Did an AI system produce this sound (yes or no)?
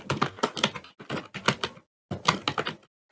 no